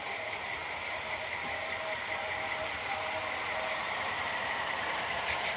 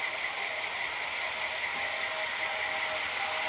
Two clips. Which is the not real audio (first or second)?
first